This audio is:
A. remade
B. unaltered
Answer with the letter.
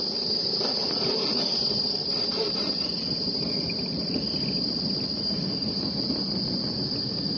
B